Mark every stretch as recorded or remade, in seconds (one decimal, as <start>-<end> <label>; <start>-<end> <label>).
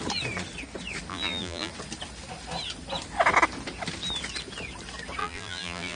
0.0-1.1 recorded; 1.1-1.7 remade; 1.7-5.2 recorded; 5.2-6.0 remade